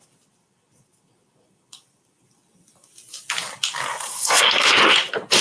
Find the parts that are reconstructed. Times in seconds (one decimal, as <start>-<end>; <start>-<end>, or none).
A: 4.1-4.7